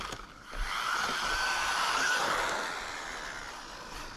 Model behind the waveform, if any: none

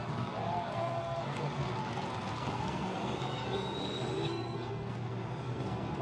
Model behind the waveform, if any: codec, SNAC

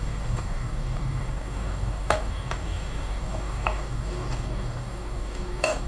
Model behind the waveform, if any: codec, DAC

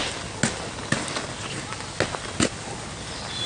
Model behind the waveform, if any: none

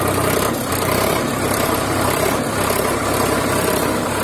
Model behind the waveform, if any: vocoder, BigVGAN v2